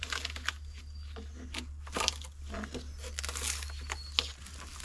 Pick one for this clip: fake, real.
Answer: real